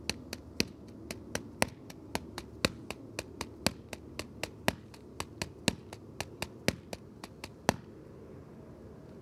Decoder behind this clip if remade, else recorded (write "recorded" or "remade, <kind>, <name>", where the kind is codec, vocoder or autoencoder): recorded